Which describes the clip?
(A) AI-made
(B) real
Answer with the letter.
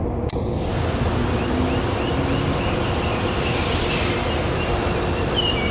B